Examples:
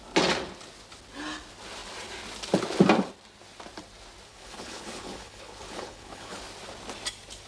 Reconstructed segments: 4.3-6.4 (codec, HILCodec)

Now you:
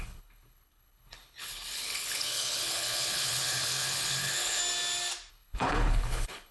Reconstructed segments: 0.0-4.6 (codec, HILCodec); 5.3-6.5

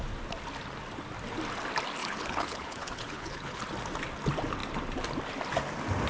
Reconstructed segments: 2.0-3.6 (codec, HILCodec)